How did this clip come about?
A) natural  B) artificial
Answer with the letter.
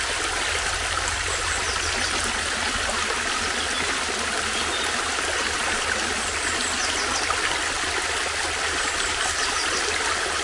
A